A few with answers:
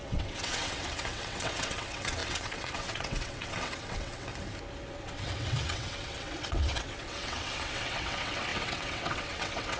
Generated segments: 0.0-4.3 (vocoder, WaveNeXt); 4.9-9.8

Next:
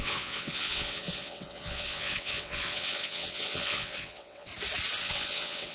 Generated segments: 0.0-4.5 (vocoder, WaveNeXt); 5.0-5.7

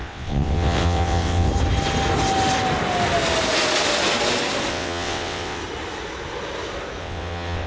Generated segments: 0.0-1.5 (vocoder, WaveNeXt); 4.7-5.6; 7.0-7.7

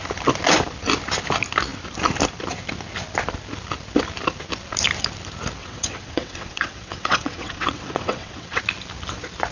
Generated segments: 5.6-8.6 (vocoder, WaveNeXt)